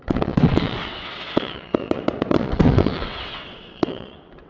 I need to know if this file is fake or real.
fake